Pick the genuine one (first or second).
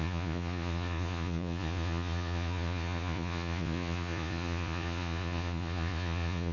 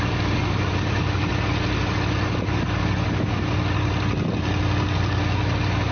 second